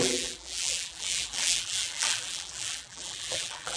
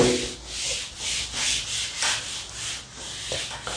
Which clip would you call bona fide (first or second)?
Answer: second